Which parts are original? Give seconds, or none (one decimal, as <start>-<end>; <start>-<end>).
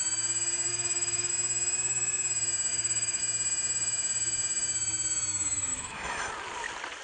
0.0-0.7; 1.3-2.7; 3.2-5.7; 6.3-7.0